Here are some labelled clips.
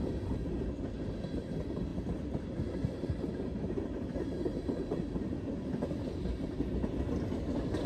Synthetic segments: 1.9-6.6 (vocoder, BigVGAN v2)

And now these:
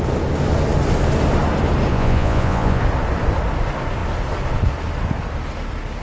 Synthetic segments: 1.9-2.8 (vocoder, Vocos)

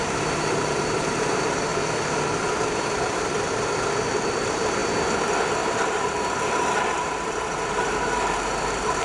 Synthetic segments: 0.0-1.7 (vocoder, BigVGAN v2); 4.1-4.8; 7.7-9.0

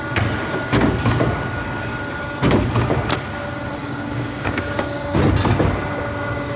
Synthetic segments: 3.8-5.2 (codec, DAC)